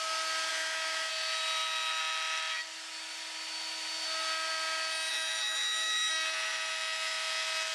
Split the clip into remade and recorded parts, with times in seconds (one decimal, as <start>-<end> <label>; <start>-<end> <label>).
0.0-0.5 recorded; 0.5-1.1 remade; 1.1-5.1 recorded; 5.1-6.1 remade; 6.1-7.7 recorded